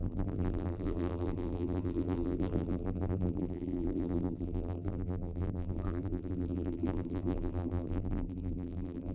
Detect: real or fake fake